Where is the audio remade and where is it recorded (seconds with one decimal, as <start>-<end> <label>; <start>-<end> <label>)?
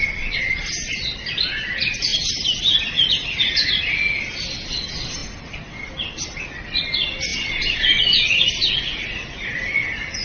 0.0-10.2 recorded